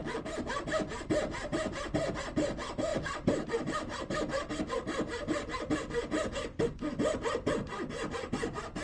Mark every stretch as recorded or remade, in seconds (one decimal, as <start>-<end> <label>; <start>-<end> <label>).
0.0-0.5 remade; 0.5-2.9 recorded; 2.9-4.6 remade; 4.6-8.8 recorded